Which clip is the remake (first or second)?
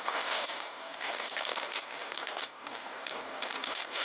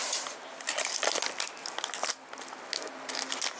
first